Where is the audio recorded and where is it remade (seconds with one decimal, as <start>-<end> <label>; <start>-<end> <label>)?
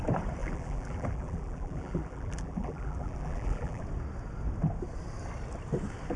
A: 0.0-0.4 recorded; 0.4-3.8 remade; 3.8-6.2 recorded